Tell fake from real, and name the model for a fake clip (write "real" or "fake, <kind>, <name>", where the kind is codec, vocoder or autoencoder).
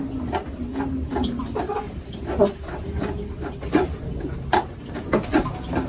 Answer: real